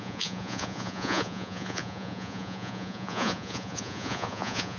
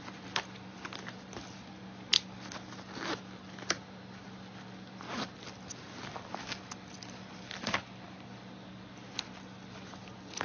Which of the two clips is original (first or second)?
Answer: second